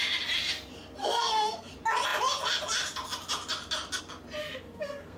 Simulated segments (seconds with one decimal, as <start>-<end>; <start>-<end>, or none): 1.0-1.7; 4.4-5.2

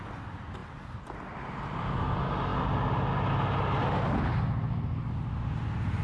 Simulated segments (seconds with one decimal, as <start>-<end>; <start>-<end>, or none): none

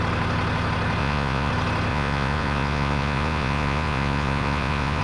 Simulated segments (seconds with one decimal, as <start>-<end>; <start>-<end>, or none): 1.0-1.5; 1.9-5.0

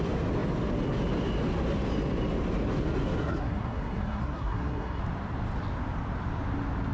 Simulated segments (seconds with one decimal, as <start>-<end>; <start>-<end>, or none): 3.2-5.0